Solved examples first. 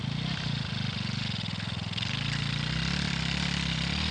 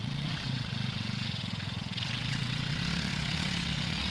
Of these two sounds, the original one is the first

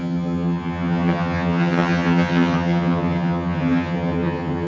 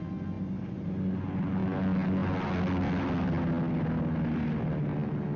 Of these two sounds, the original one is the second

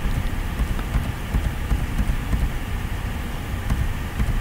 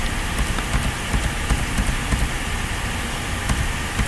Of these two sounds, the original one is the second